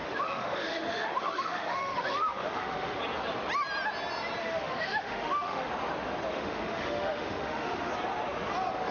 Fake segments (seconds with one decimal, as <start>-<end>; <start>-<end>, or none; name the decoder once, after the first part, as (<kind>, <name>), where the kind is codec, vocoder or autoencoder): 0.0-3.0 (autoencoder, DAC-VAE); 4.4-5.7; 6.3-7.9